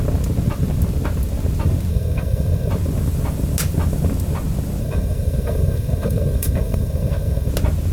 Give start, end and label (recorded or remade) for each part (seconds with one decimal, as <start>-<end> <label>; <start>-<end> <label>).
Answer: 0.0-1.9 recorded; 1.9-2.7 remade; 2.7-4.8 recorded; 4.8-7.5 remade; 7.5-7.9 recorded